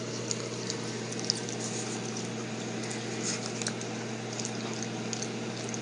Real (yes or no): yes